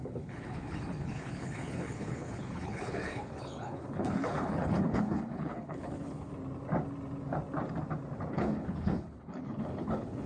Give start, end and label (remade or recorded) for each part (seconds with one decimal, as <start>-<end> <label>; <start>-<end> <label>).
0.0-6.3 remade; 6.3-8.3 recorded; 8.3-10.3 remade